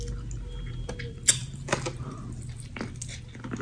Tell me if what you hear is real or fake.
real